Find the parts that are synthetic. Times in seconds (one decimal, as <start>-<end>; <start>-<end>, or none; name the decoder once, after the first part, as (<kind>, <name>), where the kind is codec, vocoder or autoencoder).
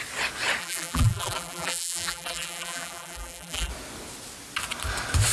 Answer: 0.6-3.7 (vocoder, BigVGAN v2)